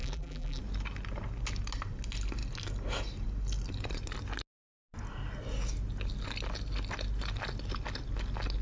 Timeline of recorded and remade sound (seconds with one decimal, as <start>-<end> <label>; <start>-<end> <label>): 0.0-0.6 remade; 0.6-8.6 recorded